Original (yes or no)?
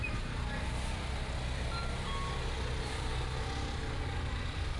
yes